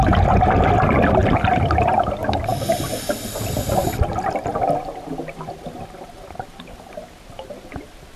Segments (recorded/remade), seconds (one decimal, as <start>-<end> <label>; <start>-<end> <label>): 0.0-1.2 recorded; 1.2-1.7 remade; 1.7-2.5 recorded; 2.5-4.5 remade; 4.5-8.2 recorded